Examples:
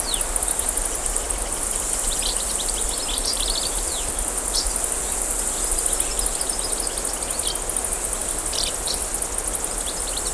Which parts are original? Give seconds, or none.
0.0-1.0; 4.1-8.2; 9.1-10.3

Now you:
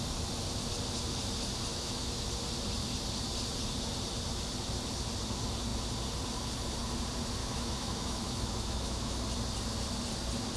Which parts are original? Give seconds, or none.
0.0-1.7; 2.3-7.4; 9.2-10.6

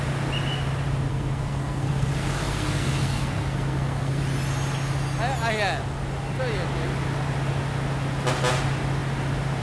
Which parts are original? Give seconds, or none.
0.0-1.1; 4.2-9.6

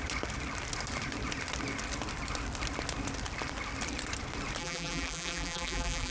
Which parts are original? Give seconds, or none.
0.0-4.6